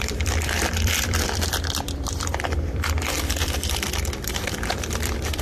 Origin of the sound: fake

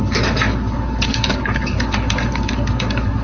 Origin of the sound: fake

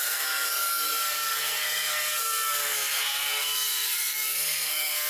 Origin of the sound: fake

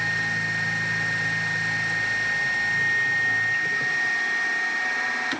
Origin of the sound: real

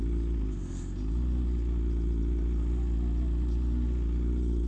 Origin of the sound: real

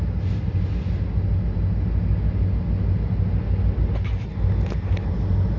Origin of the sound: real